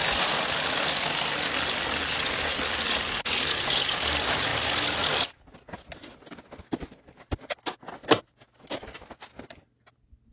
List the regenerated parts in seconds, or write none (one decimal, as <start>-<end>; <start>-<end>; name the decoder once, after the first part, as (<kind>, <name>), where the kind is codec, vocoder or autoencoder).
none